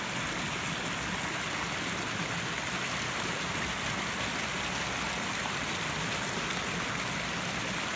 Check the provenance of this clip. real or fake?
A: real